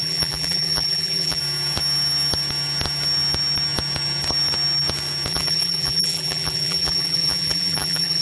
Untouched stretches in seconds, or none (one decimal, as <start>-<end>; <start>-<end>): 1.4-5.3